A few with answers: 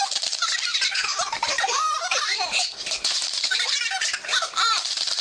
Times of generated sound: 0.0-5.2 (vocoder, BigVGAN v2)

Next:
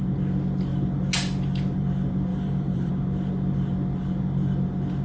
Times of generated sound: 2.3-2.9 (vocoder, BigVGAN v2)